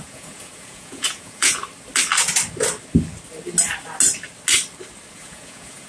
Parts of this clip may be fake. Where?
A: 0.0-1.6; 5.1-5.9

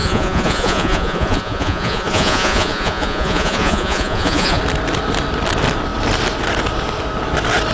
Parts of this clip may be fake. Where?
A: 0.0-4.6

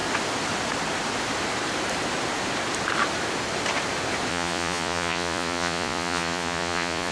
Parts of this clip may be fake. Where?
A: 4.3-7.1

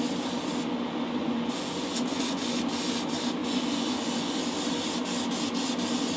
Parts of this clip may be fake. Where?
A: 1.2-2.6; 3.4-4.4

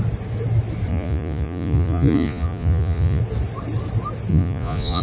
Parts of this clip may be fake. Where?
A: 0.9-3.2; 4.3-5.0

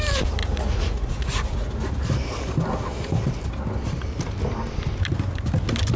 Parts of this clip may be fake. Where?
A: 0.4-1.7

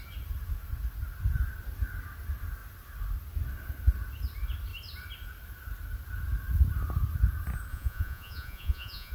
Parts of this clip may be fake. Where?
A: 7.7-9.1